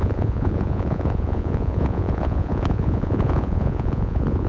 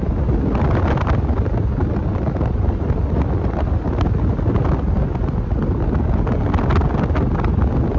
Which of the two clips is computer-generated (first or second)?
first